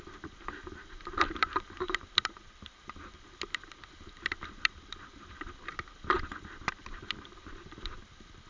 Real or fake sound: fake